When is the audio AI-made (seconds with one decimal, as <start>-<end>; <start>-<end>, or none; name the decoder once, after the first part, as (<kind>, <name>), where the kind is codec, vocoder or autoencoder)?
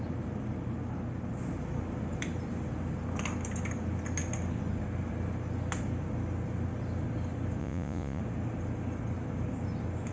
7.6-8.2 (vocoder, Vocos)